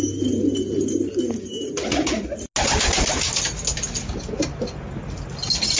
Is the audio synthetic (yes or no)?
no